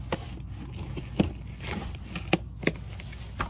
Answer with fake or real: real